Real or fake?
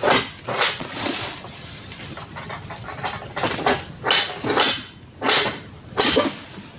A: real